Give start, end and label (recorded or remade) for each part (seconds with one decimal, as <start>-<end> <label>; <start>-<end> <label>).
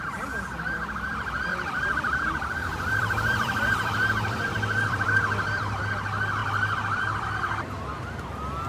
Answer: 0.0-1.5 recorded; 1.5-5.8 remade; 5.8-6.4 recorded; 6.4-7.3 remade; 7.3-8.7 recorded